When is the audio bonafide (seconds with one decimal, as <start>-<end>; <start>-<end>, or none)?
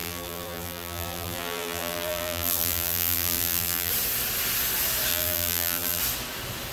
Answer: 3.9-5.1; 6.0-6.7